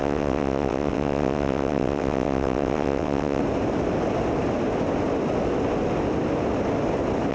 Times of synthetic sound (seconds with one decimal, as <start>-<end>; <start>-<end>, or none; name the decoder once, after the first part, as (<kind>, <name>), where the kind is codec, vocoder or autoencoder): 0.0-3.4 (vocoder, WaveNeXt)